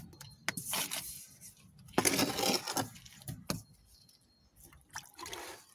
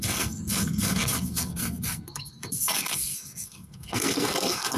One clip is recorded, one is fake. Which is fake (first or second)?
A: second